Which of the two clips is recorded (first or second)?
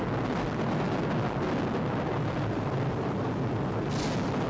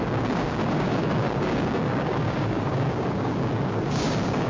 first